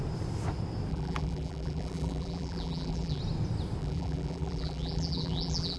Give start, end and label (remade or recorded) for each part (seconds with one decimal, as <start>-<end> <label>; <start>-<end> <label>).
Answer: 0.0-0.9 recorded; 0.9-3.2 remade; 3.2-3.8 recorded; 3.8-5.8 remade